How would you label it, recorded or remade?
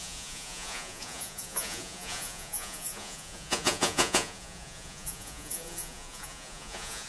remade